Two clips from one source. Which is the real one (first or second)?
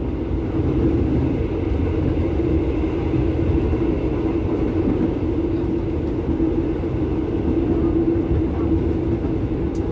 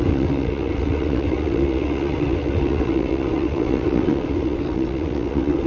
first